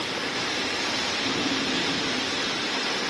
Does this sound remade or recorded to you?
recorded